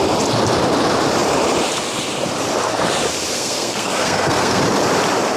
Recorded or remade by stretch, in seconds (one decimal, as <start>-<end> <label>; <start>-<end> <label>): 0.0-3.3 recorded; 3.3-4.6 remade; 4.6-5.4 recorded